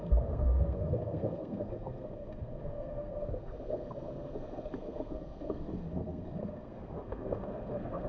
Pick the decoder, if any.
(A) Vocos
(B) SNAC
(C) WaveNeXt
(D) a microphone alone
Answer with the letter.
B